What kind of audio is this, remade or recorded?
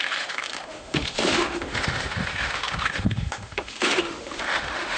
remade